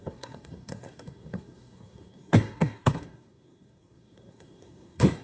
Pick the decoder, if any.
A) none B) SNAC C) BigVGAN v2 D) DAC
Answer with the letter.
B